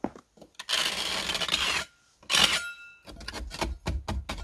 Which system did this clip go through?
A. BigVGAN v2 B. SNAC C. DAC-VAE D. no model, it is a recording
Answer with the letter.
D